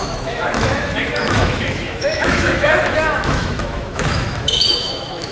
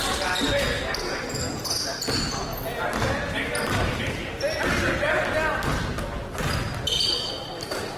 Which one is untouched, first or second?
second